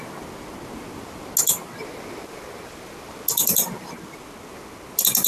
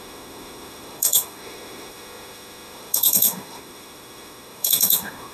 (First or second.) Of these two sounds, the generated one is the second